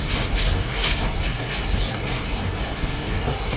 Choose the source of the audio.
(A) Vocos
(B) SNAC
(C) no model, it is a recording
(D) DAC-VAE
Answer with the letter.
B